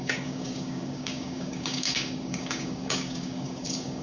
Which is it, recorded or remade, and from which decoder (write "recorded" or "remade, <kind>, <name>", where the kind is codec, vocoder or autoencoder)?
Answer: remade, codec, DAC